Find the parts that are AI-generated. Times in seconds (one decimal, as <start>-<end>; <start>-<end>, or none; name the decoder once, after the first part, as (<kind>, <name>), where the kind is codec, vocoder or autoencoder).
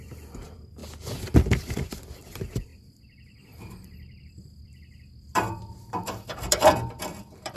0.0-0.8 (vocoder, BigVGAN v2); 1.8-7.6